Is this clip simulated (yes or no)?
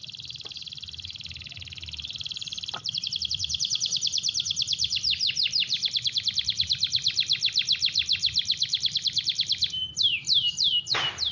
no